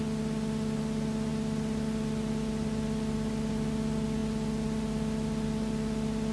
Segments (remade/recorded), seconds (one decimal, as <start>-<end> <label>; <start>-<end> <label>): 0.0-6.3 recorded